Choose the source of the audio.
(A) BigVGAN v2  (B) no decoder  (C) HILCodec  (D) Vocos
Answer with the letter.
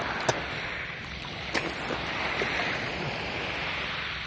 B